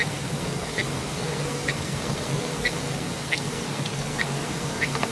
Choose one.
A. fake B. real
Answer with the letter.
A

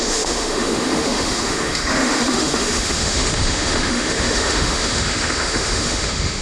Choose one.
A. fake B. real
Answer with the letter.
A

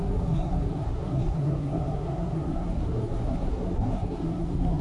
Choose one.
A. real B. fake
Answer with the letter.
B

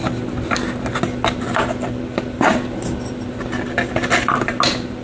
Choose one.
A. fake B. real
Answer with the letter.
B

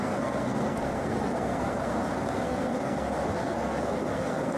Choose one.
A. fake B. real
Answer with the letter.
A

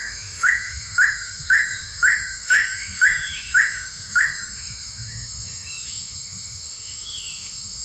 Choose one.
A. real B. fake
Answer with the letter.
B